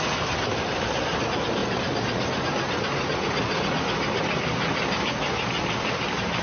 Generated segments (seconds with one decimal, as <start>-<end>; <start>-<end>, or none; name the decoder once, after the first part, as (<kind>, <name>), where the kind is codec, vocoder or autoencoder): none